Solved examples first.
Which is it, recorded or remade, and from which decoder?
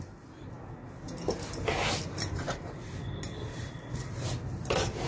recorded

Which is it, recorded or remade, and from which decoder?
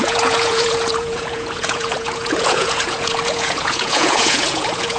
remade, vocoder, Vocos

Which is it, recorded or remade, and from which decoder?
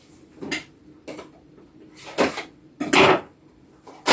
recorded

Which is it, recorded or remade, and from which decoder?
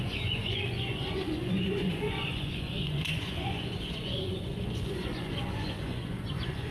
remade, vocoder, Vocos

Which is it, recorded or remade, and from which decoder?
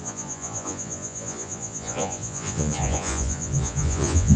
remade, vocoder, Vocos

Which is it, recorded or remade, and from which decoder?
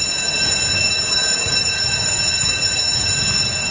remade, vocoder, Vocos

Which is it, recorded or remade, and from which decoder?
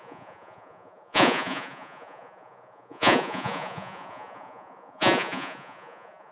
remade, vocoder, Vocos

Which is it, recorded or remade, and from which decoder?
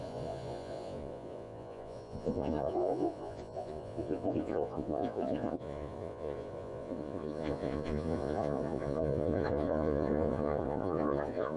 remade, vocoder, Vocos